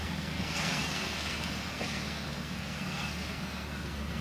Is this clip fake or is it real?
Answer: fake